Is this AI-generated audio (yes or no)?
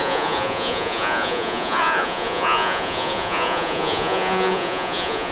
yes